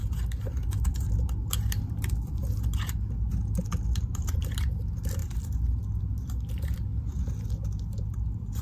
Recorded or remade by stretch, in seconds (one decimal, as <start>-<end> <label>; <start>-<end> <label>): 0.0-3.3 remade; 3.3-4.0 recorded; 4.0-5.2 remade; 5.2-6.0 recorded; 6.0-6.9 remade; 6.9-8.1 recorded; 8.1-8.6 remade